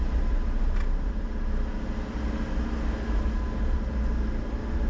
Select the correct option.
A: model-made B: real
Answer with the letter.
B